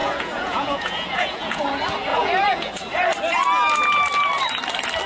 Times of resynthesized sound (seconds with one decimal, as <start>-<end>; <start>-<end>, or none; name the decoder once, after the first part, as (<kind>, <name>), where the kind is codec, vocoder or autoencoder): 0.0-1.6 (vocoder, Vocos); 2.1-2.7

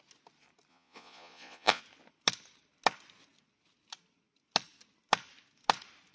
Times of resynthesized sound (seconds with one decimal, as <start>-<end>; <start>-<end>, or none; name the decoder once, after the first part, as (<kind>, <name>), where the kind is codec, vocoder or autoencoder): 0.7-1.8 (vocoder, Vocos)

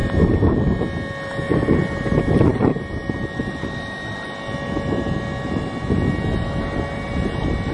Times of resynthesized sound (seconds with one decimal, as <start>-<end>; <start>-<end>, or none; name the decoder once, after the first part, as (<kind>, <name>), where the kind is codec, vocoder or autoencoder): none

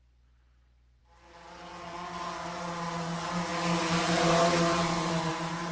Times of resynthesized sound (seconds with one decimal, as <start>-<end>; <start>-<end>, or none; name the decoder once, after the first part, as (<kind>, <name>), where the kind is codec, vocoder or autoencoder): none

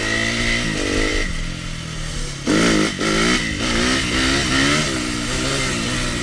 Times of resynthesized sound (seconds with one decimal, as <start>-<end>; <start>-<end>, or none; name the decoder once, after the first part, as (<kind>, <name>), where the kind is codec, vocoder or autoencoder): none

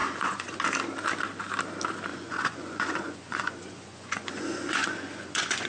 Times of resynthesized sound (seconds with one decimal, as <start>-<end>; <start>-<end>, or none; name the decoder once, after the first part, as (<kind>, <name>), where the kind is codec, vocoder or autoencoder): 0.0-0.6 (vocoder, Vocos); 2.1-5.7

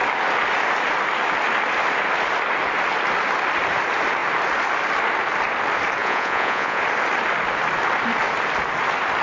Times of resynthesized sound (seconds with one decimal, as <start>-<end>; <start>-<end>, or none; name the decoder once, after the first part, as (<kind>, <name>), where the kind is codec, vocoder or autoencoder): 6.0-6.8 (vocoder, Vocos)

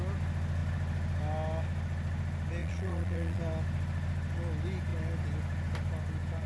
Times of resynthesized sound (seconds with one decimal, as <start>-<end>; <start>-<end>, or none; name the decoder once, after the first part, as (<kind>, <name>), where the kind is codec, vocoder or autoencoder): 2.6-3.4 (vocoder, Vocos)